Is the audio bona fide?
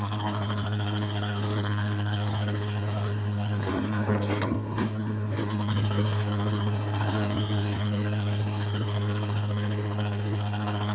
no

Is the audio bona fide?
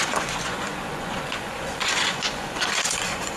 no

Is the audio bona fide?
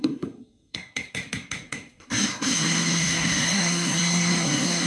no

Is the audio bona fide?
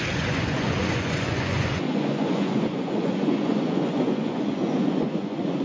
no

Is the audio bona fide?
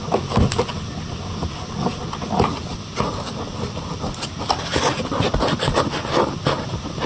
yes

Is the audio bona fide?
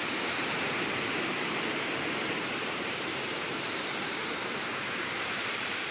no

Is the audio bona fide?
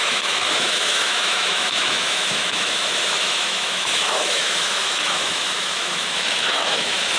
no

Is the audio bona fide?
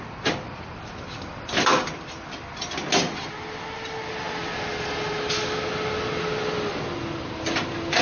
yes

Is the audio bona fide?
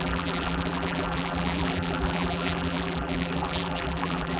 no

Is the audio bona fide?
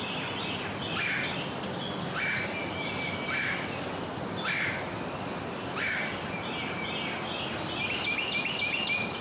yes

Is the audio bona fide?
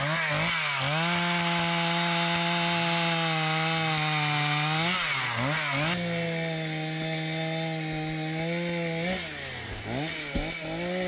yes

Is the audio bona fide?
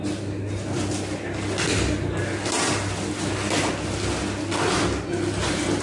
yes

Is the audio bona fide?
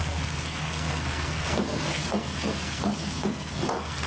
no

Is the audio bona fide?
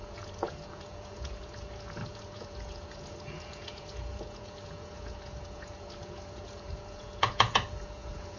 no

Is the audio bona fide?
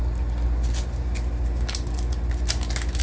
yes